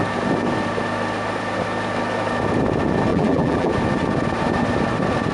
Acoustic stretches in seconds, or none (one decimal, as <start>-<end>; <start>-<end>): 0.0-3.1; 3.7-5.3